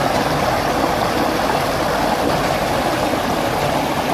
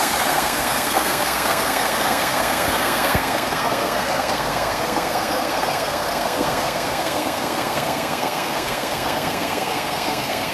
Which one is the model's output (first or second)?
second